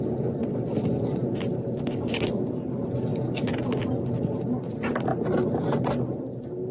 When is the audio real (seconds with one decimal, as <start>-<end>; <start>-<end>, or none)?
0.0-0.4; 1.4-6.7